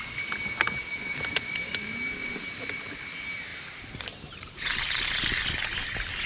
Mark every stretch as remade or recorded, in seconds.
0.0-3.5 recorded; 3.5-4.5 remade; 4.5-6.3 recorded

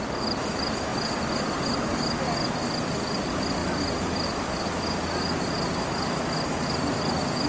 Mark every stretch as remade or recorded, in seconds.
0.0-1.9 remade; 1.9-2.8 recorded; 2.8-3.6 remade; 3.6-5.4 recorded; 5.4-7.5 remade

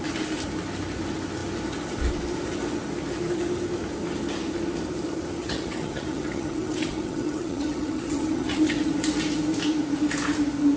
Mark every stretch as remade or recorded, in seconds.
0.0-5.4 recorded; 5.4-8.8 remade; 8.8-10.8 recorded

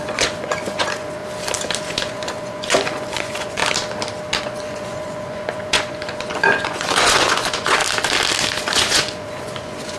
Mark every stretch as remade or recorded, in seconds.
0.0-1.2 remade; 1.2-1.8 recorded; 1.8-3.6 remade; 3.6-4.4 recorded; 4.4-7.8 remade; 7.8-8.6 recorded; 8.6-10.0 remade

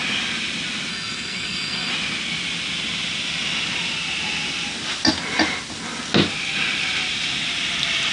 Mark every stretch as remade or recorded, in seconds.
0.0-0.9 recorded; 0.9-1.9 remade; 1.9-8.1 recorded